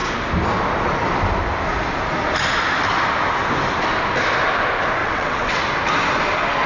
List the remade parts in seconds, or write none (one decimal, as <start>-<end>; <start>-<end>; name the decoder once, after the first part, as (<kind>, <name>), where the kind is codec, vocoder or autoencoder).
5.0-5.6 (vocoder, WaveNeXt)